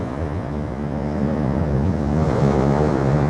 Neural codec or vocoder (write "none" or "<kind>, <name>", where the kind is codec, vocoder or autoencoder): vocoder, Vocos